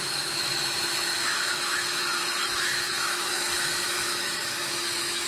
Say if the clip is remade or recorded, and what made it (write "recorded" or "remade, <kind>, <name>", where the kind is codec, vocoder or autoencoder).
remade, autoencoder, DAC-VAE